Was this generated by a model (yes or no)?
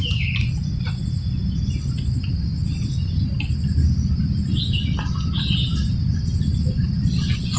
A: no